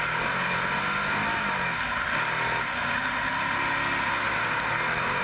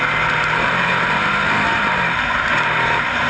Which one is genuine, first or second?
first